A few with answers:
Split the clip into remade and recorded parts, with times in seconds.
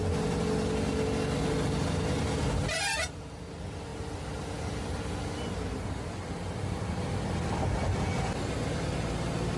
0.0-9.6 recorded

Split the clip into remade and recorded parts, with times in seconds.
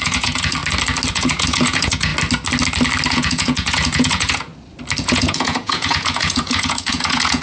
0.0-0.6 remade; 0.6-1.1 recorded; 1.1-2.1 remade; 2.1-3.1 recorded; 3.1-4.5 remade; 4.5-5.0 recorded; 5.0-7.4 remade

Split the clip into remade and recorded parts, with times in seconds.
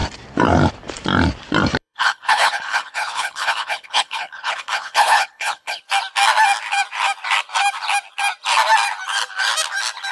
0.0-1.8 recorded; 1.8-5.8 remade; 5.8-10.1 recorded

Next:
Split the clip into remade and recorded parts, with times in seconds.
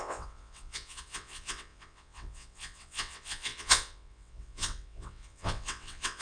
0.0-6.2 remade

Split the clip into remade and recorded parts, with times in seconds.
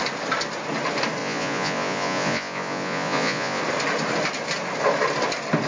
0.0-1.2 recorded; 1.2-3.6 remade; 3.6-5.7 recorded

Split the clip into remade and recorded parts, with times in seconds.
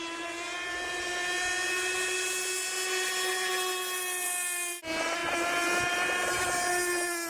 0.0-7.3 recorded